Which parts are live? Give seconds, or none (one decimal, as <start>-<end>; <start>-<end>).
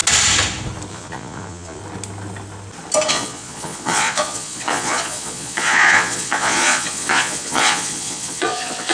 0.0-0.9; 1.8-3.1